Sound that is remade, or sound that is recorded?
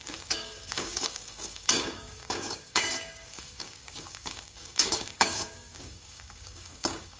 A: remade